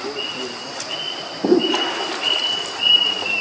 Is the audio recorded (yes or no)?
yes